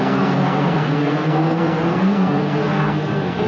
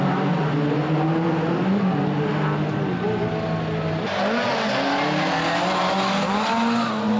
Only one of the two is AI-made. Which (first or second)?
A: first